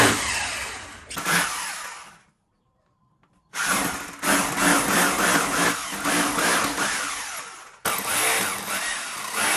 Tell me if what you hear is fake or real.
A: real